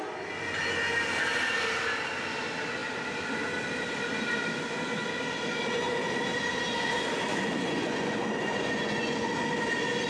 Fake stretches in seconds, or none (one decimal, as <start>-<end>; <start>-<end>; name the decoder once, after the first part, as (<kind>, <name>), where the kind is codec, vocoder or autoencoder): 7.3-9.3 (vocoder, Vocos)